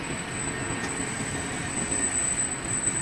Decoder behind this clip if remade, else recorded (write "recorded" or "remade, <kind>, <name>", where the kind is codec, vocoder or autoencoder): recorded